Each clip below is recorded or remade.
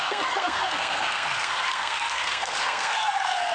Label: remade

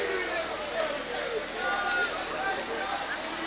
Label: recorded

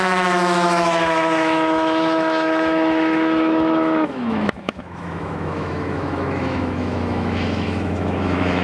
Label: remade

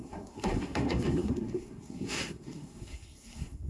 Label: remade